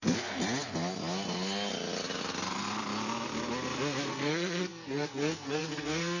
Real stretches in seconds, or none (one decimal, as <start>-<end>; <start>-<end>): 0.4-4.1